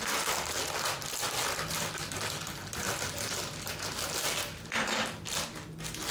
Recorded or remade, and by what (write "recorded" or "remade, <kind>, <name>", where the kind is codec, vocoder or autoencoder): recorded